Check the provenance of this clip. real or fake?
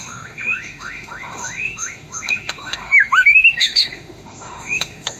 fake